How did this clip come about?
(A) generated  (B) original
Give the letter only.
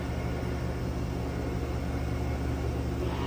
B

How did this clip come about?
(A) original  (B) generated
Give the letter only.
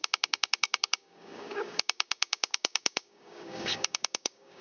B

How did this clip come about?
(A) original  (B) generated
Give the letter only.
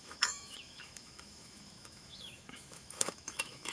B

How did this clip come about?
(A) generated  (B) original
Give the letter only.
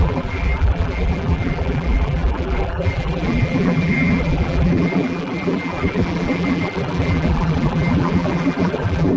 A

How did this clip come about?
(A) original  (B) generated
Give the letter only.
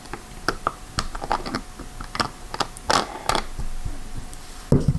A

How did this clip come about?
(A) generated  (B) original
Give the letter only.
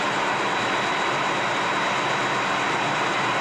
B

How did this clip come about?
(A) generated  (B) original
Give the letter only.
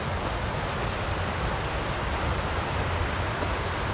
B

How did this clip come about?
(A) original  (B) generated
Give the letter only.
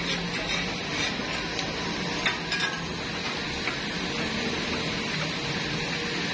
A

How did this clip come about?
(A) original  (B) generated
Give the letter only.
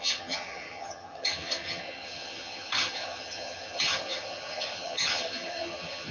B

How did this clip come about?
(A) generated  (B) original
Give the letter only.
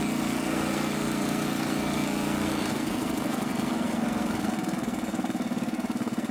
A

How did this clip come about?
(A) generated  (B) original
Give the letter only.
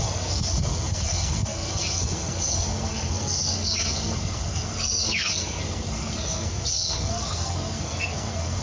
A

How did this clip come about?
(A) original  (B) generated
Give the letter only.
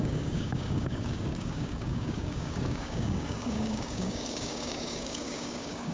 B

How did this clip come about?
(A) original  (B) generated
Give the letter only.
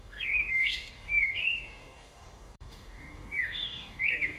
B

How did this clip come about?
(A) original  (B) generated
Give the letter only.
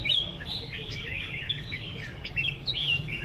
B